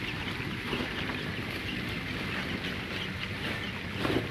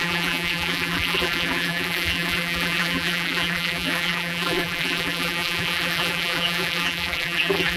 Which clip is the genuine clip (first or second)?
first